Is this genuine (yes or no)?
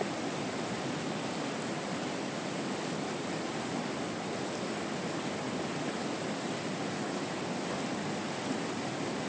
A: yes